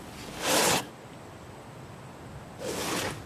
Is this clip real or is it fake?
real